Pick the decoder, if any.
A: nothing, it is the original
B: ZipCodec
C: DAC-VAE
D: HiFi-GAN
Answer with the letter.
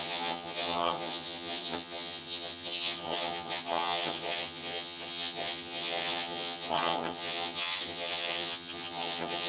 D